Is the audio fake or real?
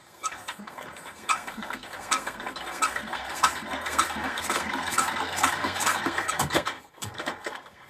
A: fake